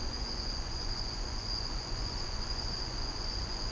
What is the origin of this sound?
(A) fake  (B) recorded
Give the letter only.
A